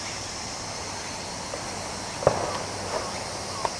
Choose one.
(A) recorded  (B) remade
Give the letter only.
A